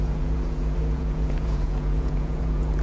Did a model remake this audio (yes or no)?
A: yes